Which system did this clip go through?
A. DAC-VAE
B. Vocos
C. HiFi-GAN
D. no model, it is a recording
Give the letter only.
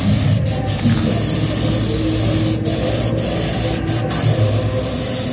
D